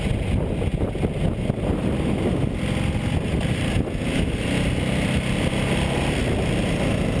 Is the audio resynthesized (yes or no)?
no